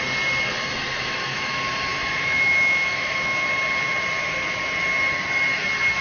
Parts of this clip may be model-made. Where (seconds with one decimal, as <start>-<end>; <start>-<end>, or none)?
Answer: 1.0-1.5; 1.9-3.6